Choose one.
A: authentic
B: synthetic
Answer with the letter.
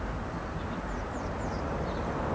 A